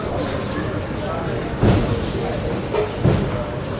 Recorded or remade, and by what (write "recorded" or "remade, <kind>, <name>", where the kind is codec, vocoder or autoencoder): recorded